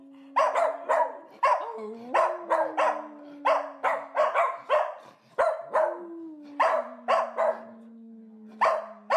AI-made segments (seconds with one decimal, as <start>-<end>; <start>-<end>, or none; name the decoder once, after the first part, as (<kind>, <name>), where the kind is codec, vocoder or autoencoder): none